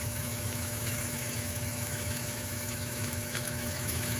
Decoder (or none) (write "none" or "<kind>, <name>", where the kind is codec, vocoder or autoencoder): autoencoder, DAC-VAE